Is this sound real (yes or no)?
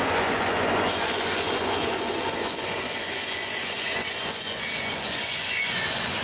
no